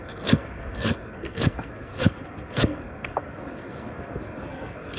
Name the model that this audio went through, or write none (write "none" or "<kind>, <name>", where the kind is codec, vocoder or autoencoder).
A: codec, SNAC